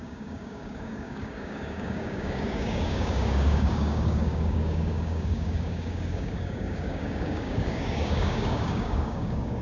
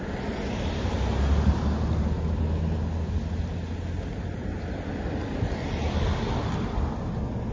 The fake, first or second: first